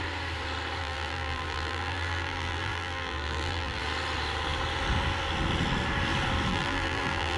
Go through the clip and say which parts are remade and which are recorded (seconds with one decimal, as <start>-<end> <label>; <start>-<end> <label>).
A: 0.0-0.8 recorded; 0.8-3.8 remade; 3.8-6.5 recorded; 6.5-7.4 remade

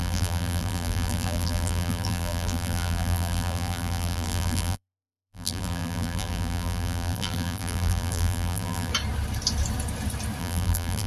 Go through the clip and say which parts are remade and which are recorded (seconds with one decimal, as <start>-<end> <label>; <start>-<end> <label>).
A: 0.0-8.9 remade; 8.9-10.4 recorded; 10.4-11.1 remade

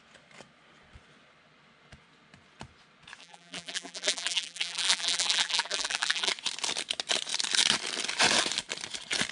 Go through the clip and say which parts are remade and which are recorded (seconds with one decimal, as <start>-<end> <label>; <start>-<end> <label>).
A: 0.0-3.2 recorded; 3.2-6.3 remade; 6.3-9.3 recorded

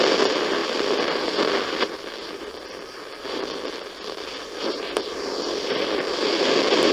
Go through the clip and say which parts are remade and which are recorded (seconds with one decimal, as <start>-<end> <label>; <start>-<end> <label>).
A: 0.0-6.9 remade

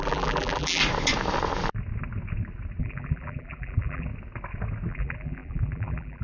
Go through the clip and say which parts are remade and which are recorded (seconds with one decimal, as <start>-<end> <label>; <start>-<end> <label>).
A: 0.0-0.8 remade; 0.8-2.8 recorded; 2.8-4.1 remade; 4.1-4.9 recorded; 4.9-6.2 remade

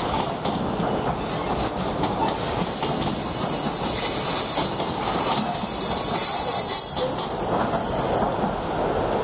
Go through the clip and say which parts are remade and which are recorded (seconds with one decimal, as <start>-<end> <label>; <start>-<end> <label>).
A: 0.0-9.2 recorded

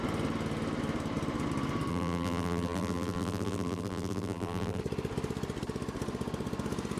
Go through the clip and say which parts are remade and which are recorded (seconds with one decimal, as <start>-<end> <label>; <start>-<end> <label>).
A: 0.0-1.9 recorded; 1.9-4.8 remade; 4.8-7.0 recorded

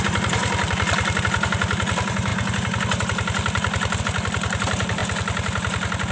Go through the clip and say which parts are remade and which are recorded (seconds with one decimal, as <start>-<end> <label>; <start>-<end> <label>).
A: 0.0-2.3 remade; 2.3-4.0 recorded; 4.0-5.0 remade; 5.0-6.1 recorded